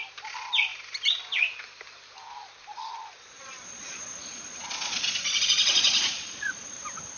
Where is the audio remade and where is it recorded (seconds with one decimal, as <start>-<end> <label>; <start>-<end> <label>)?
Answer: 0.0-2.7 recorded; 2.7-6.8 remade; 6.8-7.2 recorded

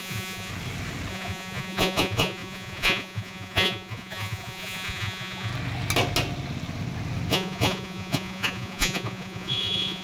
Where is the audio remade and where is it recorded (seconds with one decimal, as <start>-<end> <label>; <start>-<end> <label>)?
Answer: 0.0-0.5 remade; 0.5-1.1 recorded; 1.1-5.5 remade; 5.5-7.3 recorded; 7.3-10.0 remade

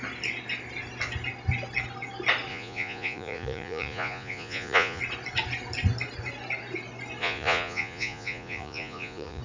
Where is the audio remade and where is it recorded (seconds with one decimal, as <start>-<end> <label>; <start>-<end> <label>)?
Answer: 0.0-2.5 recorded; 2.5-5.0 remade; 5.0-7.2 recorded; 7.2-9.4 remade

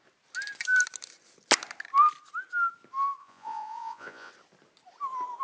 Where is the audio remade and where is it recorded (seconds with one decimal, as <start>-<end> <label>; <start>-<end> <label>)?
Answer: 0.0-3.2 recorded; 3.2-4.3 remade; 4.3-5.4 recorded

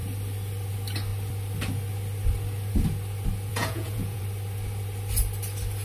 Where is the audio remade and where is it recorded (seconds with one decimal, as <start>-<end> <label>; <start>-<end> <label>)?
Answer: 0.0-3.5 recorded; 3.5-4.2 remade; 4.2-5.8 recorded

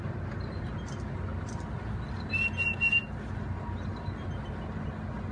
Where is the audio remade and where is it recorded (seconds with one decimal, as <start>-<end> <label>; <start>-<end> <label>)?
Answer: 0.0-5.3 recorded

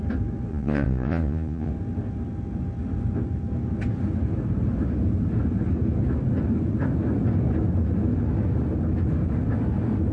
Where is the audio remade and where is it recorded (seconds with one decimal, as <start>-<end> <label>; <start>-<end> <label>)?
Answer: 0.0-0.5 recorded; 0.5-1.7 remade; 1.7-10.1 recorded

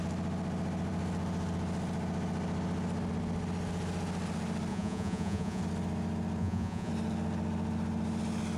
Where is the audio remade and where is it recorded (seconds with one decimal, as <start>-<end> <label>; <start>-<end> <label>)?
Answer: 0.0-4.7 recorded; 4.7-5.6 remade; 5.6-6.4 recorded; 6.4-6.9 remade; 6.9-8.6 recorded